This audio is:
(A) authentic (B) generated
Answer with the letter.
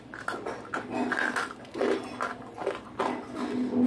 A